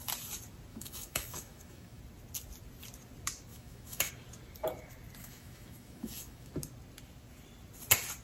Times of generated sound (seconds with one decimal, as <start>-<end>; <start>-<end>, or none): 0.7-2.0; 3.5-4.1; 5.2-6.5